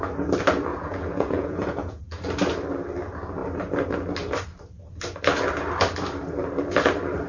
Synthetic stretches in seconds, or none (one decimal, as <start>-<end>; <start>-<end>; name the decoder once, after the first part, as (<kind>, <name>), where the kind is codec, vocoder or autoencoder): 0.7-2.0 (vocoder, Vocos)